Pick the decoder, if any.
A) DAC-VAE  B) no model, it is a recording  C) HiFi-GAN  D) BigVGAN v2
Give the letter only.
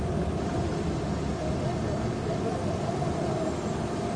B